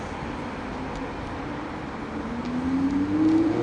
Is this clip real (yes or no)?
yes